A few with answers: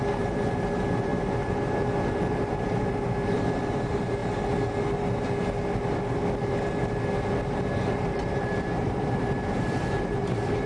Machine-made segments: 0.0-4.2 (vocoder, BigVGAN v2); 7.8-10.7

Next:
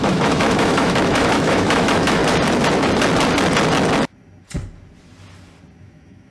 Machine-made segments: 0.0-2.2 (autoencoder, DAC-VAE); 5.8-6.3